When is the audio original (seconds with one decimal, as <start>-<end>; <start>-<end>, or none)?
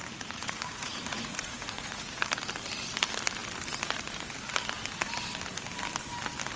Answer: 2.0-6.6